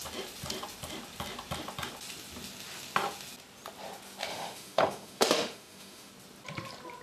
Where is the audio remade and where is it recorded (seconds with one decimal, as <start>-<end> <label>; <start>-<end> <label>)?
0.0-4.3 recorded; 4.3-6.1 remade; 6.1-7.0 recorded